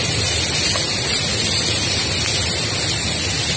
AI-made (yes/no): no